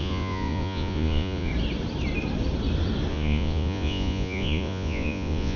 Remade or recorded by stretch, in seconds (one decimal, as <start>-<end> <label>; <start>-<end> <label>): 0.0-1.5 remade; 1.5-3.1 recorded; 3.1-5.6 remade